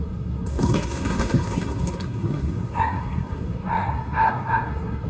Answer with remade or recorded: remade